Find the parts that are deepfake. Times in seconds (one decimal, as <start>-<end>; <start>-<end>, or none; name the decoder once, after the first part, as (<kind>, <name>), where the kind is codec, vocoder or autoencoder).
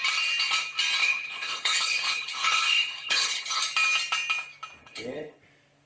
1.0-3.6 (codec, HILCodec); 4.8-5.4